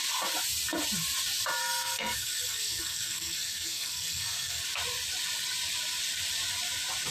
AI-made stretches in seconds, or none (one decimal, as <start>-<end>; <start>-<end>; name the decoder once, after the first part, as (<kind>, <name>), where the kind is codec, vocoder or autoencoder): 1.6-4.6 (codec, SNAC)